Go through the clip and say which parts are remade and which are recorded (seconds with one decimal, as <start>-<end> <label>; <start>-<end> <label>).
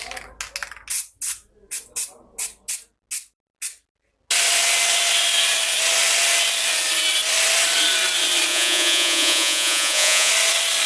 0.0-8.5 recorded; 8.5-10.3 remade; 10.3-10.9 recorded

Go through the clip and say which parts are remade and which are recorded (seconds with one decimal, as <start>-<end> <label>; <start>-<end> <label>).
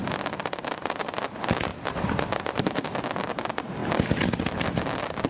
0.0-5.3 recorded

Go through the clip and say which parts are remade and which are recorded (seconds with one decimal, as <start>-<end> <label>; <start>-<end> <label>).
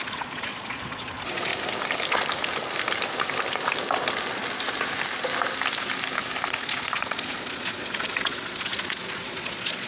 0.0-1.5 remade; 1.5-6.5 recorded; 6.5-9.9 remade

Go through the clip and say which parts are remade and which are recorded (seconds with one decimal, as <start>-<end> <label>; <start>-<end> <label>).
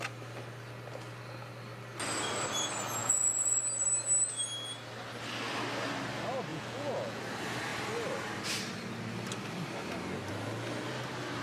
0.0-3.0 recorded; 3.0-3.6 remade; 3.6-6.5 recorded; 6.5-7.2 remade; 7.2-11.4 recorded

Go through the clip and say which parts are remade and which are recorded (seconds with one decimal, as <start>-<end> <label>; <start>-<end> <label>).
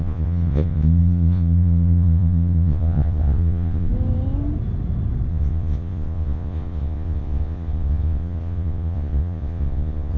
0.0-3.9 remade; 3.9-5.3 recorded; 5.3-10.2 remade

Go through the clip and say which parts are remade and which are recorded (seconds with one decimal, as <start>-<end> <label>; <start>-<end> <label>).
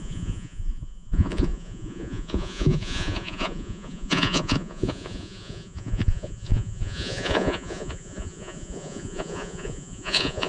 0.0-10.5 remade